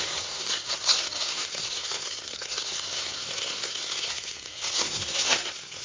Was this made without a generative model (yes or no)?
no